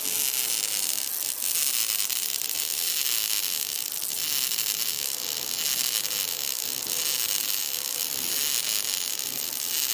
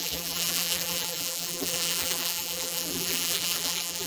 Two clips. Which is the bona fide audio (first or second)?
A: first